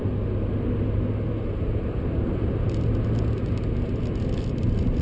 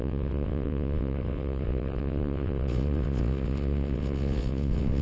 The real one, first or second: first